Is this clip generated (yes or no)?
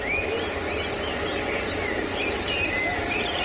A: no